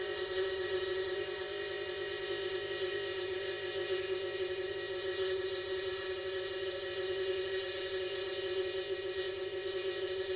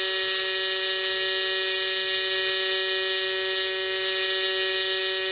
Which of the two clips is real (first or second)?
second